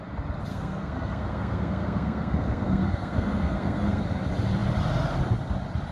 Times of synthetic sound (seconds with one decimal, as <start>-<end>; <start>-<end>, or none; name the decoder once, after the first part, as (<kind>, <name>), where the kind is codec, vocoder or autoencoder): 0.5-4.0 (codec, SNAC)

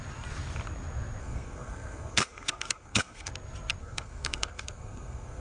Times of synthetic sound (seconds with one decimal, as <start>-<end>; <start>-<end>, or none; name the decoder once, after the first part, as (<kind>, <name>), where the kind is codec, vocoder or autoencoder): 1.2-3.3 (codec, SNAC); 3.8-5.4

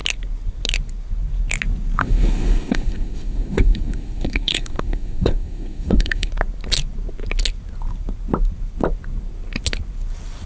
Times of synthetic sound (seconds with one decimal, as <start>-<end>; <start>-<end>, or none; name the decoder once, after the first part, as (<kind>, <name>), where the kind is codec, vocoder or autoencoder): 2.0-6.3 (codec, SNAC)

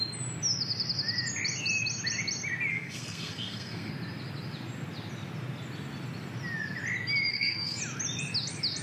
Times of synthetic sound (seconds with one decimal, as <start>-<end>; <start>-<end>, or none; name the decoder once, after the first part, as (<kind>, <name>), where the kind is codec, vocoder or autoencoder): 2.7-3.9 (codec, SNAC); 7.3-7.8

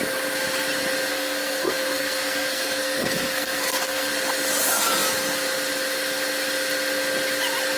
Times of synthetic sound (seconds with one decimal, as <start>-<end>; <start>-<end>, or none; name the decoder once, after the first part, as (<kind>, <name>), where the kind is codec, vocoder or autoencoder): 1.1-4.1 (codec, SNAC)

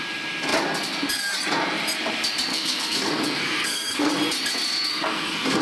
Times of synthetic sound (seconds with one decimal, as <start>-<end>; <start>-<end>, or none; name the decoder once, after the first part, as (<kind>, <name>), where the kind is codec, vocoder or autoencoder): 2.5-4.1 (codec, SNAC); 4.9-5.6

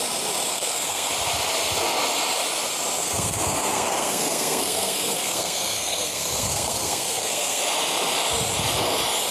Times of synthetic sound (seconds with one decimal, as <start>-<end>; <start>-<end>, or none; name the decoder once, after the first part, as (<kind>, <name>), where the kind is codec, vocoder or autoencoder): 0.5-1.1 (codec, SNAC); 3.0-7.6

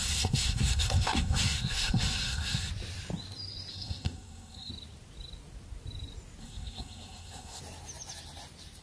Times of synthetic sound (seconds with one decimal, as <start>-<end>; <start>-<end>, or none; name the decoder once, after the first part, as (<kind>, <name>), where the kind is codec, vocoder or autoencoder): 0.0-2.7 (codec, SNAC); 3.7-4.7; 6.4-7.6